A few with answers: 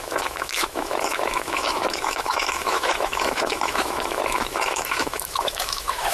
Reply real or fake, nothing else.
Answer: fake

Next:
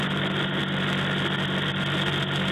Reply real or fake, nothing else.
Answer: real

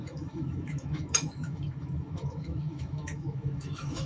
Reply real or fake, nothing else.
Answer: fake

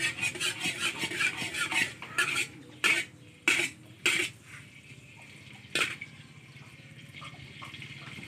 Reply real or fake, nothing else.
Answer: real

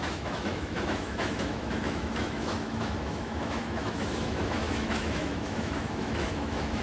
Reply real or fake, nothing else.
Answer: fake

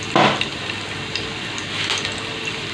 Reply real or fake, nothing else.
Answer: real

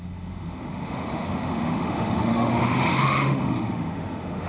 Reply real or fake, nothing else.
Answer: fake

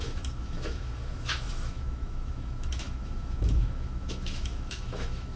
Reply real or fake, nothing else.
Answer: fake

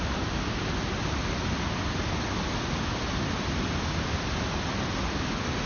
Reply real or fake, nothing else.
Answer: real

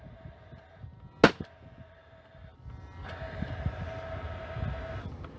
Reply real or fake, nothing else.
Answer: real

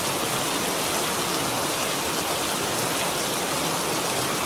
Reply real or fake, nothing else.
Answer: real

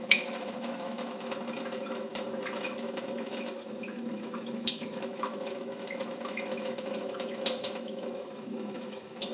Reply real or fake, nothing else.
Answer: fake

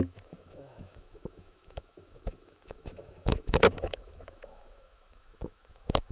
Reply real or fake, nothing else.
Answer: fake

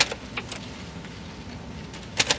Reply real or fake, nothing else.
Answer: real